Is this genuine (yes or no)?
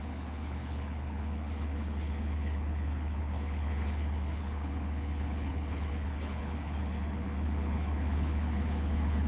no